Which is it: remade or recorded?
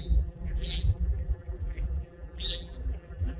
remade